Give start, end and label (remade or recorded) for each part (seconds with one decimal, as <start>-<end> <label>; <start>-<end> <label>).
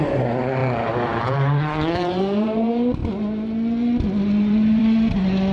0.0-3.0 remade; 3.0-4.4 recorded; 4.4-5.5 remade